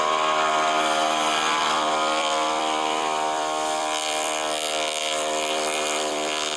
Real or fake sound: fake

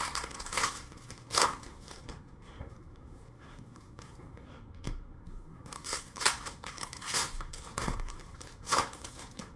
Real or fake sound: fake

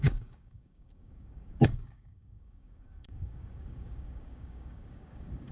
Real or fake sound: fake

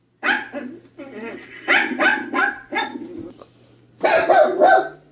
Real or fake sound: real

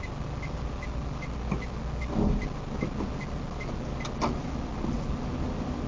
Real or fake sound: real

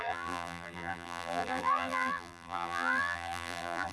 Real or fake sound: fake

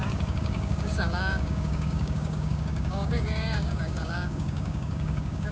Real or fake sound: fake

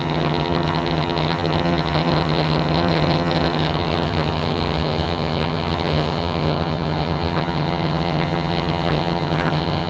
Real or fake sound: fake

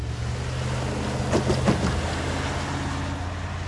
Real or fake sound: real